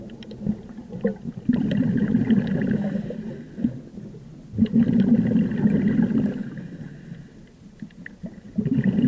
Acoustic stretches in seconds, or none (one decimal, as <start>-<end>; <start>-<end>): 0.0-9.1